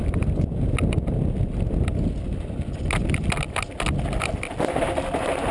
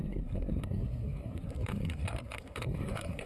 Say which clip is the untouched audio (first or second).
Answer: first